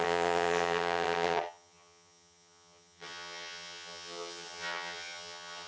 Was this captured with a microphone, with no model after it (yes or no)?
no